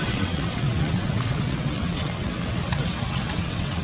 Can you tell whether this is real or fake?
fake